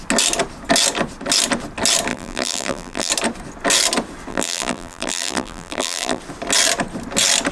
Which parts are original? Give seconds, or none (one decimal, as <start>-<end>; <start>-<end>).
0.0-2.1; 3.1-4.3; 6.2-7.5